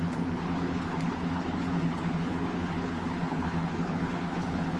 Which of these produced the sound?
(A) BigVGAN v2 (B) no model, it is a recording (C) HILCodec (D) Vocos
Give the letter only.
C